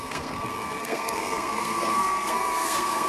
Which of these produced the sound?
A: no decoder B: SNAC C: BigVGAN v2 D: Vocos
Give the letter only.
B